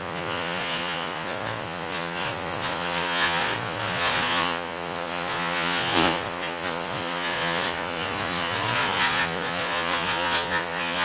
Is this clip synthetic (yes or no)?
yes